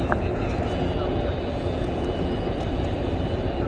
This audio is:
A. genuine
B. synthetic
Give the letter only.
A